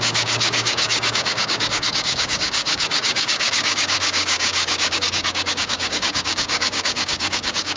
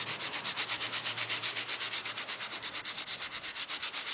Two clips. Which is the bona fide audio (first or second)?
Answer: second